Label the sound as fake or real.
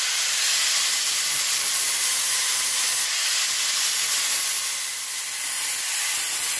real